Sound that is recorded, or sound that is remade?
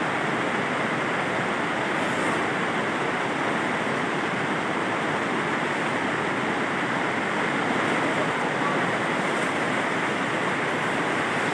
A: recorded